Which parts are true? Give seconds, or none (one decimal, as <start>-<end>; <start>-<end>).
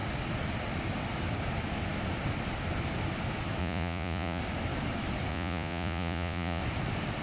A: 0.0-3.6; 4.4-5.3; 6.6-7.2